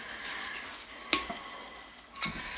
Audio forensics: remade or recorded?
recorded